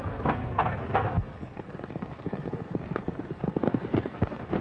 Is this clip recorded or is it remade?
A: remade